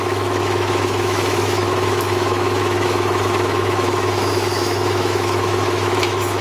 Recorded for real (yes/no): no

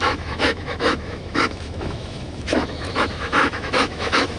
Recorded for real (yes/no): no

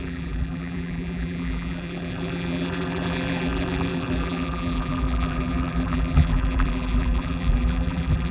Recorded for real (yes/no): no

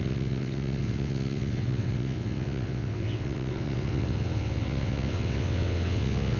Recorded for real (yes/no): no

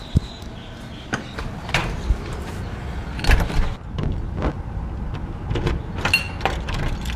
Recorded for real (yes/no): yes